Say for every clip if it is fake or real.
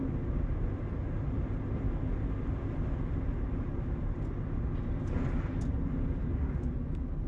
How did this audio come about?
real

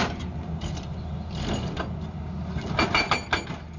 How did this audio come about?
real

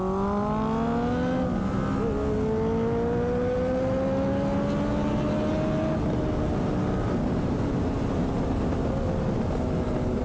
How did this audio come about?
real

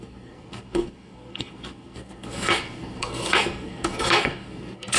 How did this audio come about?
fake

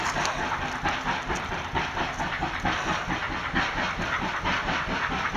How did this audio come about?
real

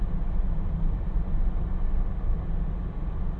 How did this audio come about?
real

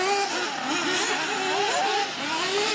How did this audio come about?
real